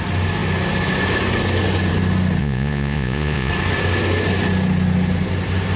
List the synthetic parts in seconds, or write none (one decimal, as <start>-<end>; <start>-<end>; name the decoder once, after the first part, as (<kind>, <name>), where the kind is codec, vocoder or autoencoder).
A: 2.4-3.5 (vocoder, Vocos)